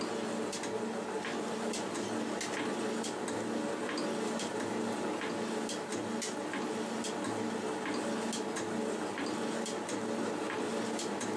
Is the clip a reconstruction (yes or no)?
no